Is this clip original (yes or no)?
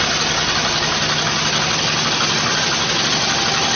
yes